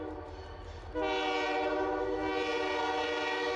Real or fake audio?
real